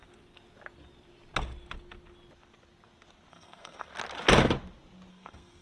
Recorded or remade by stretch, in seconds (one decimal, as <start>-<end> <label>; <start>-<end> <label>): 0.0-3.3 recorded; 3.3-3.9 remade; 3.9-5.1 recorded; 5.1-5.6 remade